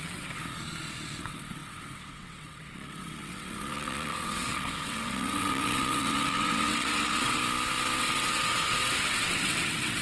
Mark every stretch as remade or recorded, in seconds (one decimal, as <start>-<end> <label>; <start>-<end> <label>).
0.0-0.4 remade; 0.4-1.2 recorded; 1.2-7.4 remade; 7.4-8.0 recorded; 8.0-10.0 remade